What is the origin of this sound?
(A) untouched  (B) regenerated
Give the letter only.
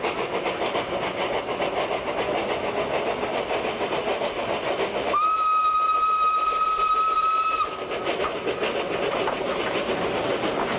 A